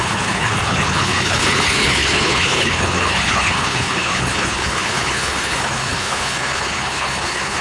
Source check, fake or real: fake